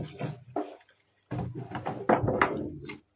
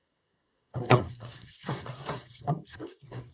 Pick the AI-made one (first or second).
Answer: second